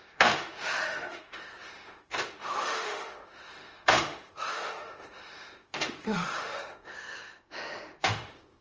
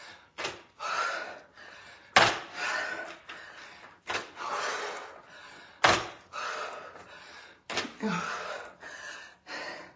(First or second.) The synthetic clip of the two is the first